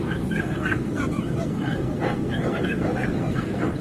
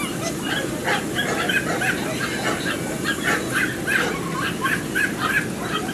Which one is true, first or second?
second